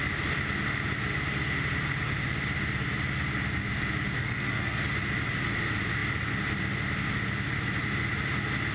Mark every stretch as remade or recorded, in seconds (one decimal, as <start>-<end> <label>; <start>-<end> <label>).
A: 0.0-4.2 recorded; 4.2-4.8 remade; 4.8-8.7 recorded